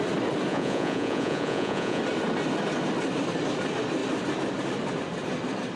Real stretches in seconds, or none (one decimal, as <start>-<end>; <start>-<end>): 0.0-0.5; 2.0-5.8